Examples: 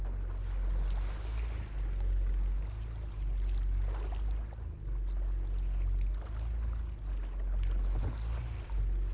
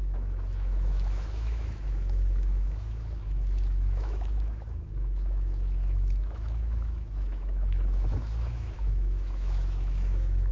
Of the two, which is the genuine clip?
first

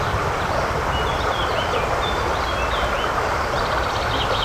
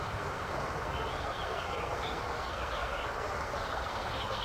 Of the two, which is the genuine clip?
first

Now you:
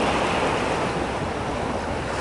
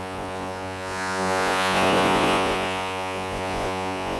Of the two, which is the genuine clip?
first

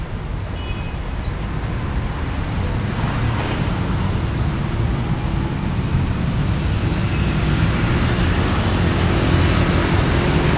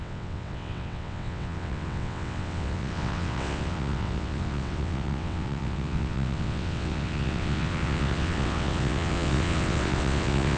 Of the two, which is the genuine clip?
first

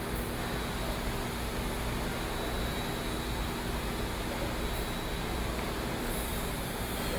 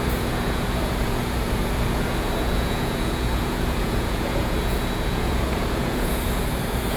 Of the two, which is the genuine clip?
first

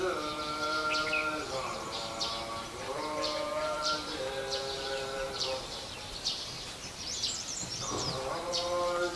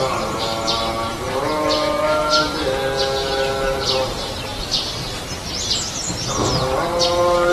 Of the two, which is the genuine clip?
second